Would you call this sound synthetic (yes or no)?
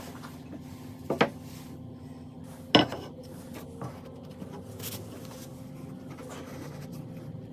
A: no